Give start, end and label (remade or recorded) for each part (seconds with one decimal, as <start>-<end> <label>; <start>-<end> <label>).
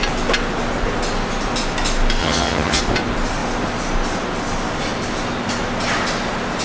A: 0.0-2.2 recorded; 2.2-2.8 remade; 2.8-6.6 recorded